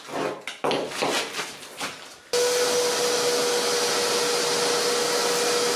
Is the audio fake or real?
real